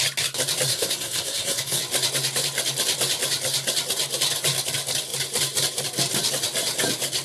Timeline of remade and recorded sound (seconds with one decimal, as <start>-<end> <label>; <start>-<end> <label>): 0.0-0.7 recorded; 0.7-1.8 remade; 1.8-7.2 recorded